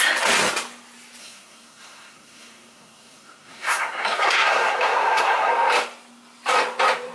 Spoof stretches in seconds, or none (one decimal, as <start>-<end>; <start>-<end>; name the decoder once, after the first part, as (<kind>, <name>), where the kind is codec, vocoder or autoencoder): 1.2-5.5 (codec, SNAC)